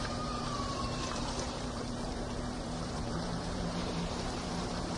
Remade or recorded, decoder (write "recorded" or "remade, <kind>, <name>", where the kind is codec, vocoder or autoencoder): remade, vocoder, BigVGAN v2